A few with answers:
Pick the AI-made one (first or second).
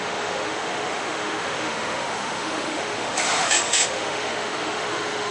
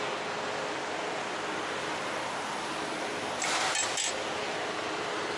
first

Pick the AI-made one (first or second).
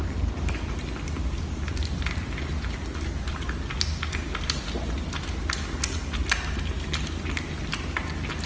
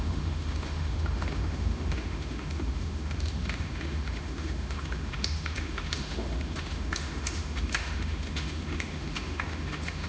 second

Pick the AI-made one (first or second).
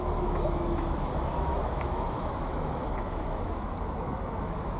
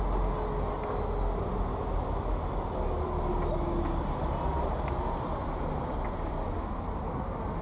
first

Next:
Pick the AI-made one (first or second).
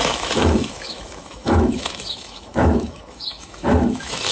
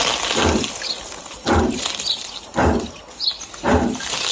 first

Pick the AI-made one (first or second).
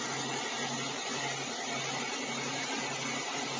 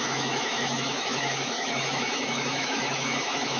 second